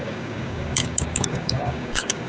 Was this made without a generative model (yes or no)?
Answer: no